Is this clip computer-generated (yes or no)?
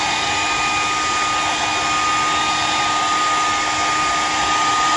no